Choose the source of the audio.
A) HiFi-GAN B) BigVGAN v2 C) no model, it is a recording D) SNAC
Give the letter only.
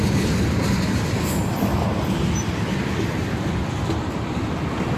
C